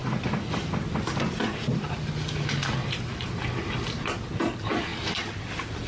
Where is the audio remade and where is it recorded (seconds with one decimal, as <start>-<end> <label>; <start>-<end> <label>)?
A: 0.0-0.6 remade; 0.6-2.8 recorded; 2.8-3.4 remade; 3.4-5.9 recorded